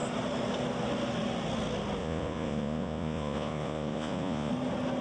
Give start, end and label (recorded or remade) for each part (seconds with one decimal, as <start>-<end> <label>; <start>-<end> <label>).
0.0-2.0 recorded; 2.0-4.5 remade; 4.5-5.0 recorded